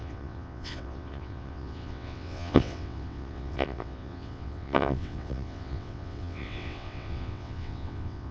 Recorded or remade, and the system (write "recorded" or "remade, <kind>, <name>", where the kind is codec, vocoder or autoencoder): remade, vocoder, WaveNeXt